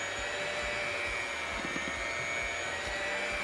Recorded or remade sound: recorded